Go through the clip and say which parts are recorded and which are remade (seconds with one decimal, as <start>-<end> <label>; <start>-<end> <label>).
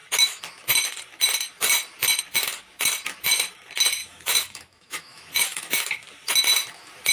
0.0-4.0 recorded; 4.0-5.8 remade; 5.8-7.1 recorded